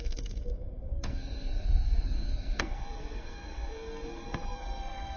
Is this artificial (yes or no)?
yes